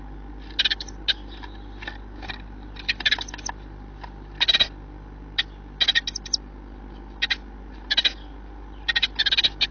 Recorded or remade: recorded